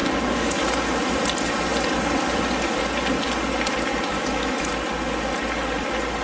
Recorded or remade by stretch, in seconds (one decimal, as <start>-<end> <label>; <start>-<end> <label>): 0.0-0.7 remade; 0.7-4.1 recorded; 4.1-4.7 remade; 4.7-6.2 recorded